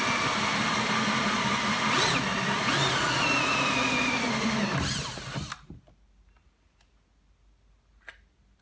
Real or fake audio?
real